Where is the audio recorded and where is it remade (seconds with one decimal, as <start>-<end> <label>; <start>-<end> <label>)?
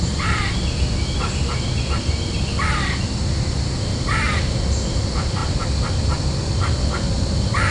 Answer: 0.0-7.7 recorded